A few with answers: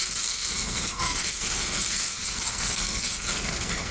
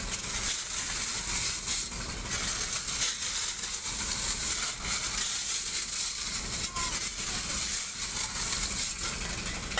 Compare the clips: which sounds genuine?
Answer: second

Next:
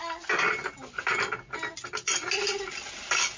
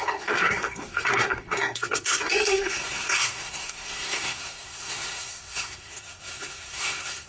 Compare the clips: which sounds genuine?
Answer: first